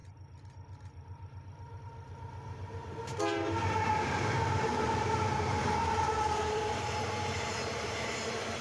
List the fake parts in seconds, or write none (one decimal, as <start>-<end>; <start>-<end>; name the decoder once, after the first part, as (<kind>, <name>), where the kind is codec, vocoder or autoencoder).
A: 0.0-8.6 (vocoder, BigVGAN v2)